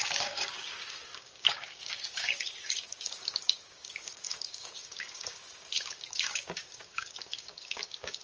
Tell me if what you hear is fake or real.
fake